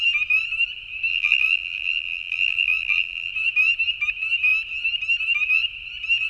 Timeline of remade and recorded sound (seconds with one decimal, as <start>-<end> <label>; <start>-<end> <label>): 0.0-1.1 recorded; 1.1-3.3 remade; 3.3-6.3 recorded